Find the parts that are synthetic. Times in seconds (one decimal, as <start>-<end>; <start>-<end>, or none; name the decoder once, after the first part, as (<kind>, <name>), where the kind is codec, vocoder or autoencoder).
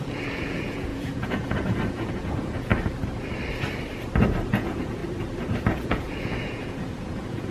0.0-2.7 (vocoder, Vocos); 4.5-5.0; 5.6-7.5